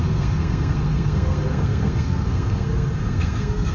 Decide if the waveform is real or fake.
fake